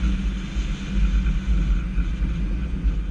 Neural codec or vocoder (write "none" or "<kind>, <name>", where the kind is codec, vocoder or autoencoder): none